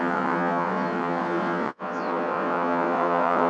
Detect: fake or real fake